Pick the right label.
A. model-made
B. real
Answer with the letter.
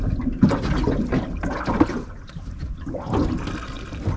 B